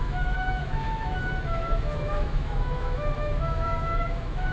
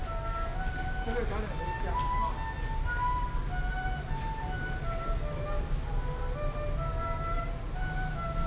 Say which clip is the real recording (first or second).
second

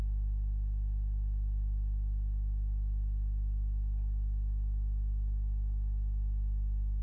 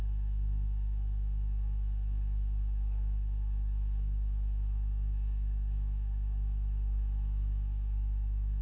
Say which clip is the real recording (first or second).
first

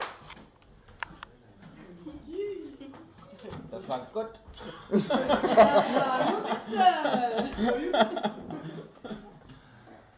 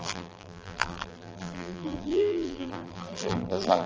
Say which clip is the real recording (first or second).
first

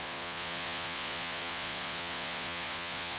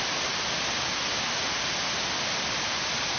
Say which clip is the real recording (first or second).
second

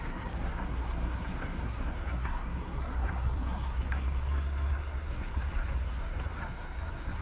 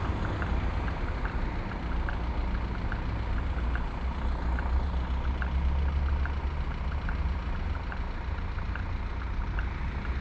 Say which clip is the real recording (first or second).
second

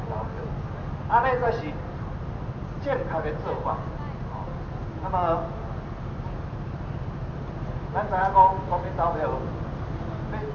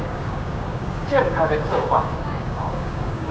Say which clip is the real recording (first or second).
first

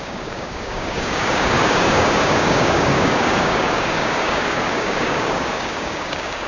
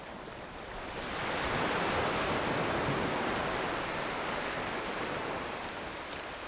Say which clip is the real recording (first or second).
second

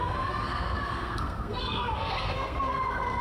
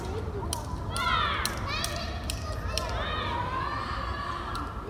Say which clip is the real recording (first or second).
second